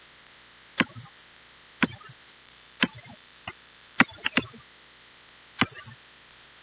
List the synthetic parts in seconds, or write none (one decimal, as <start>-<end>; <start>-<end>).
2.4-4.6